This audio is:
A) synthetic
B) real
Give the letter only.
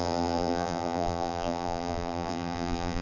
A